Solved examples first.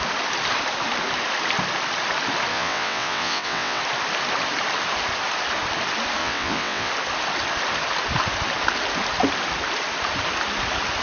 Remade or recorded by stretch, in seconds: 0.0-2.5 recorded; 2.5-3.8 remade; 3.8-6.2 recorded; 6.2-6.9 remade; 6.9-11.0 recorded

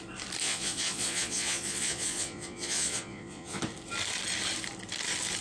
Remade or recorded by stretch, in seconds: 0.0-0.4 recorded; 0.4-3.6 remade; 3.6-5.4 recorded

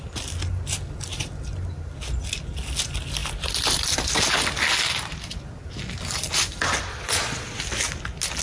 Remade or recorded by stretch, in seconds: 0.0-6.9 recorded; 6.9-7.6 remade; 7.6-8.4 recorded

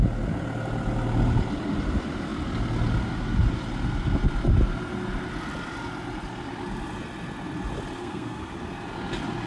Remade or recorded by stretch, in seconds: 0.0-8.0 recorded; 8.0-8.5 remade; 8.5-9.5 recorded

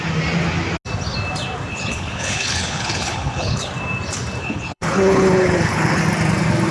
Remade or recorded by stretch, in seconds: 0.0-1.7 recorded; 1.7-3.7 remade; 3.7-4.4 recorded; 4.4-6.0 remade; 6.0-6.7 recorded

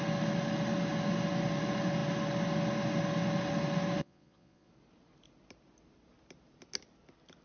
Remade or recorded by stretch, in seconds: 0.0-4.0 recorded; 4.0-4.7 remade; 4.7-7.4 recorded